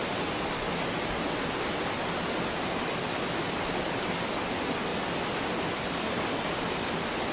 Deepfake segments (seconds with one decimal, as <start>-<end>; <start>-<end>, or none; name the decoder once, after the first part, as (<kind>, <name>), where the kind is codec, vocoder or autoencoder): none